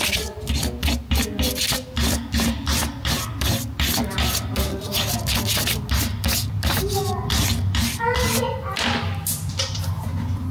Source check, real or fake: real